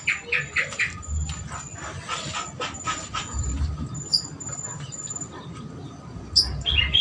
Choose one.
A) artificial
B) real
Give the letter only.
B